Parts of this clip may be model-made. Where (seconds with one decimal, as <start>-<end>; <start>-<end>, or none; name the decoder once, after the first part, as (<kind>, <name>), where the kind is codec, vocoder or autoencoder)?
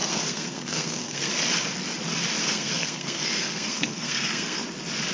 0.0-1.3 (codec, SNAC); 2.4-4.6